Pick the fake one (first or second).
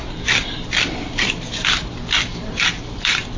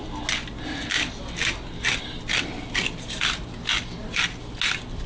first